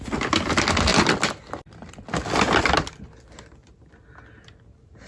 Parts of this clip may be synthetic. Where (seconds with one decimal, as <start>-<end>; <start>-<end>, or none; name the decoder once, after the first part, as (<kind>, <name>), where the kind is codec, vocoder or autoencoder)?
none